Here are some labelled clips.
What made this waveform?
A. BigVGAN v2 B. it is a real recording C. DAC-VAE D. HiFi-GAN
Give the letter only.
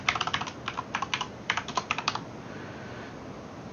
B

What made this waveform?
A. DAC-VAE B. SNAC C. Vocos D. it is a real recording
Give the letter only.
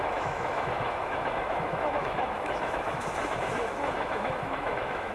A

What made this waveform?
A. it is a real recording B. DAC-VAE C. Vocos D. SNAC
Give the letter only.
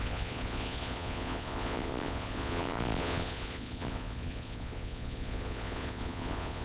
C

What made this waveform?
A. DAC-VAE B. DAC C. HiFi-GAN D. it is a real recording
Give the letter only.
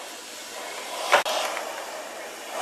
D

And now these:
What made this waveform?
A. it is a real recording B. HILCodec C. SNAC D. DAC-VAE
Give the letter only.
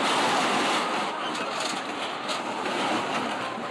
A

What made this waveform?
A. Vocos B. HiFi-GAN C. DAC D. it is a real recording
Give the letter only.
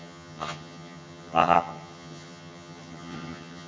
B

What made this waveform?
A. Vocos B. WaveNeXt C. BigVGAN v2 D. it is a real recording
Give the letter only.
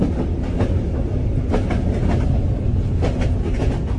D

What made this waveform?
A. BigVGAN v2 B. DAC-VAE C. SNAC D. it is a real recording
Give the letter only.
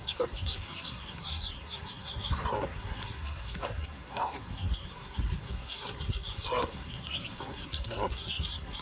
C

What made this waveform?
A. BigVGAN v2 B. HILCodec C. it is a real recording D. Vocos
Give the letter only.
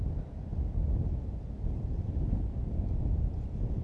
C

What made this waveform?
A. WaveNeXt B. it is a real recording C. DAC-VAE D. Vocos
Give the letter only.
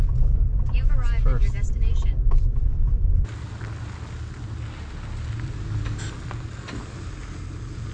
B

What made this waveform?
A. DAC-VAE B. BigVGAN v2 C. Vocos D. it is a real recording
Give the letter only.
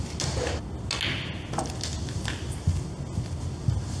D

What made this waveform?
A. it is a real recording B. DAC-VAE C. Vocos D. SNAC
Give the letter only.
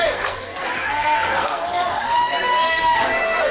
D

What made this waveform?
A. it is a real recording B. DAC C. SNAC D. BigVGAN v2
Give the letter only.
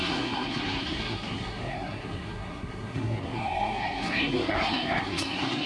C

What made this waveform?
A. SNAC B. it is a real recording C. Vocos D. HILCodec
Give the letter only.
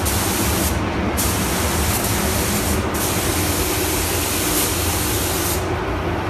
B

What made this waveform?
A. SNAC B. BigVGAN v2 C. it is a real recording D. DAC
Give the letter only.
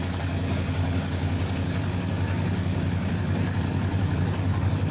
D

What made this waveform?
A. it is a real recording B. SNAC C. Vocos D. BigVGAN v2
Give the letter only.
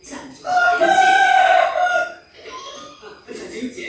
A